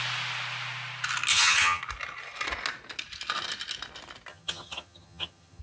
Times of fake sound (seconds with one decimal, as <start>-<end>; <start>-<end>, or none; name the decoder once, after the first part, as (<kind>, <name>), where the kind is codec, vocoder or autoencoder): 1.3-1.8 (vocoder, HiFi-GAN); 4.3-5.6